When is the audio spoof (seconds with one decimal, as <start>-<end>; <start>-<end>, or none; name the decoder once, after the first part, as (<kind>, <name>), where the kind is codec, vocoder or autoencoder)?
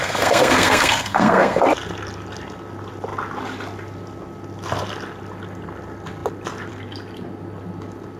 0.0-1.6 (codec, SNAC)